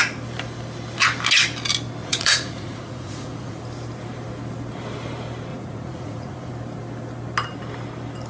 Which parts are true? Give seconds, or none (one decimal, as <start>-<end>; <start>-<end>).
0.0-2.0; 3.6-5.5; 6.5-8.3